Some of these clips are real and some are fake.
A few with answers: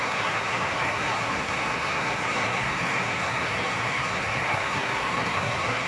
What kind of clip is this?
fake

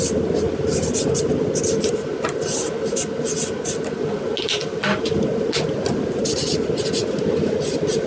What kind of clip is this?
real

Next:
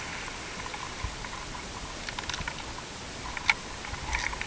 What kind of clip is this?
real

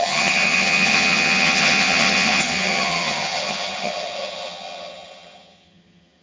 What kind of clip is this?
fake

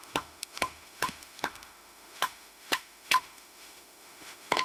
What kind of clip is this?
fake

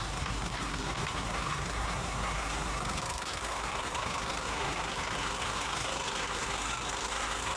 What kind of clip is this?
fake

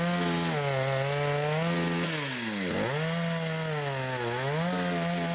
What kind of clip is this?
real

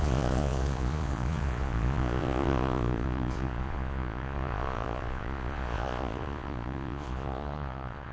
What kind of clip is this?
fake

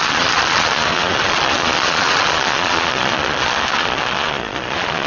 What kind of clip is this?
fake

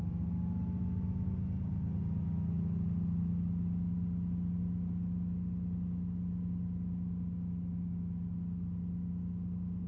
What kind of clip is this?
real